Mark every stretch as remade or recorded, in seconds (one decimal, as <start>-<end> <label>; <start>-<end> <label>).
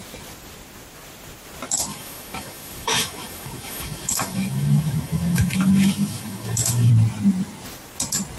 0.0-1.9 recorded; 1.9-6.9 remade; 6.9-8.4 recorded